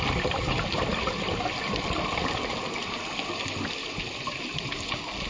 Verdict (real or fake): real